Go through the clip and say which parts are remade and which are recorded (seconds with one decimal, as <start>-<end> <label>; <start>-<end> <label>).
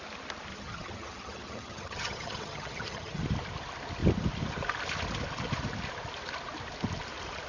0.0-0.5 recorded; 0.5-3.2 remade; 3.2-7.5 recorded